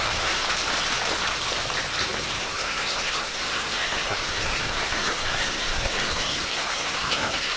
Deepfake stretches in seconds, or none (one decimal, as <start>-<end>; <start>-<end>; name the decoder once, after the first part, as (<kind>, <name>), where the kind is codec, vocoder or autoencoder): 0.0-0.4 (codec, SNAC); 2.4-7.6